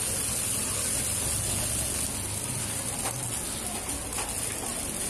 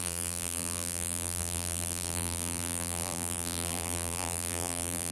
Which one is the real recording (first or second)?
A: first